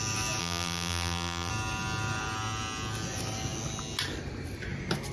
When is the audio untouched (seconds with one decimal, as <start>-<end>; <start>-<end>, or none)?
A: 0.0-0.4; 1.5-5.1